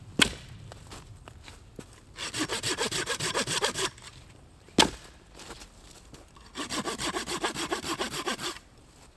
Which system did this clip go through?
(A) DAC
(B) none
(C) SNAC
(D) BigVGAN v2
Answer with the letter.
B